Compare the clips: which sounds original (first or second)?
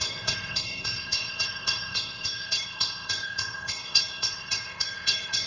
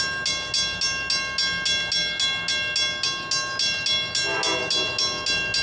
second